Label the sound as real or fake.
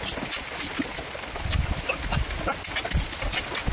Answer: real